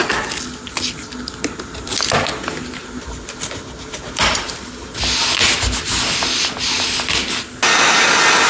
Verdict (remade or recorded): recorded